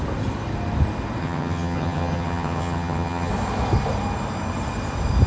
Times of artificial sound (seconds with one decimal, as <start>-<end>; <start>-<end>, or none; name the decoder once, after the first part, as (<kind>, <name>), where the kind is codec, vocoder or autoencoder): 1.2-3.3 (vocoder, HiFi-GAN)